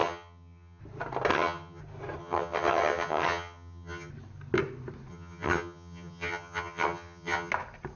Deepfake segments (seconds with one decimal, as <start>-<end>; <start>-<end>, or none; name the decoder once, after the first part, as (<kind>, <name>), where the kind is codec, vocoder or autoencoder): 0.0-0.8 (vocoder, HiFi-GAN); 1.3-1.8; 2.2-4.1; 5.1-7.5